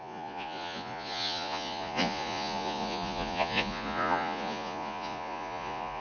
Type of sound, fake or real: fake